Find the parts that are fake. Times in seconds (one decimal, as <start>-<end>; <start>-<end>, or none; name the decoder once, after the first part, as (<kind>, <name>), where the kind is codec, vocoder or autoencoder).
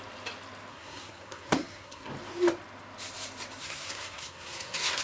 0.7-2.1 (codec, SNAC); 3.6-5.0